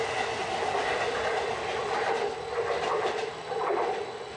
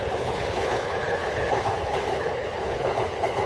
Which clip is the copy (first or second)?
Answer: second